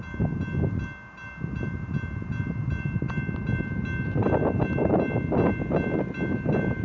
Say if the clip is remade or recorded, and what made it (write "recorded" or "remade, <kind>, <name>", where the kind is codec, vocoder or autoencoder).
recorded